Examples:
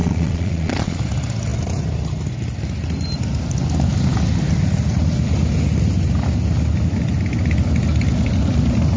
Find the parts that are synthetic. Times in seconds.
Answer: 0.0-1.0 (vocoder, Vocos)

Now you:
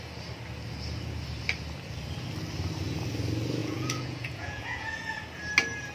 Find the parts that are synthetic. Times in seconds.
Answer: 3.6-5.2 (vocoder, Vocos)

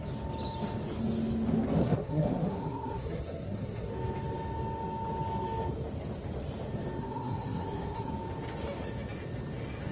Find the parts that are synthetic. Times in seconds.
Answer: 1.8-3.9 (codec, SNAC); 7.0-8.1

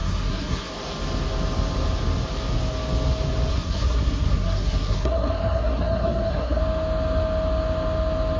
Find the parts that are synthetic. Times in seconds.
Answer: 0.0-0.7 (codec, SNAC); 3.5-6.6

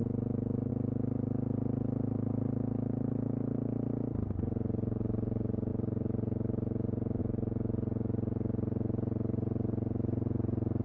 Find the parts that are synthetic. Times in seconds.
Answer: 0.0-0.7 (autoencoder, DAC-VAE)

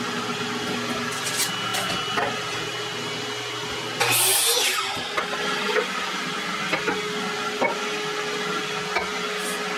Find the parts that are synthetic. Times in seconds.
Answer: none

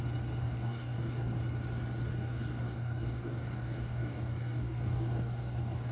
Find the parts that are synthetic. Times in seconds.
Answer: 0.4-1.4 (codec, DAC); 2.1-5.9

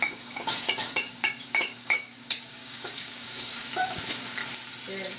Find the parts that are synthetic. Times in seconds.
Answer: 0.0-4.4 (codec, DAC)